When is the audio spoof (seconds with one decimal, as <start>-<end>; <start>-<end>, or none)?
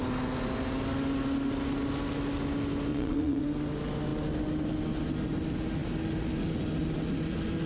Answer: 2.9-3.4